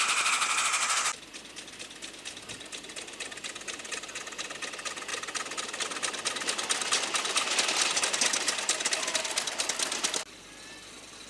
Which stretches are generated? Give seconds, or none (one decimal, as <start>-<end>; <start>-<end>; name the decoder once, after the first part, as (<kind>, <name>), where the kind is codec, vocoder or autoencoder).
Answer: none